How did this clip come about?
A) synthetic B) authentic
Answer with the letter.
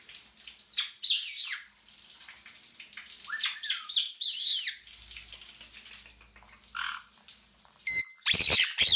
B